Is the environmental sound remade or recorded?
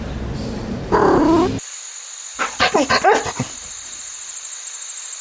recorded